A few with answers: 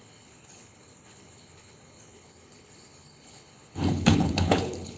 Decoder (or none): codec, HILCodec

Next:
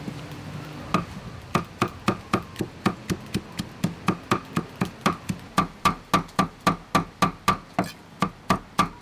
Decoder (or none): none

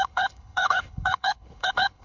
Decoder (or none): codec, HILCodec